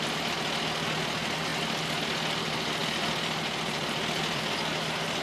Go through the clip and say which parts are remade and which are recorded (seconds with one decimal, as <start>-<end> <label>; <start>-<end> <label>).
0.0-2.8 recorded; 2.8-4.5 remade; 4.5-5.2 recorded